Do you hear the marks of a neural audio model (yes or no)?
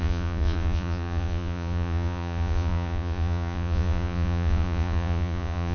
yes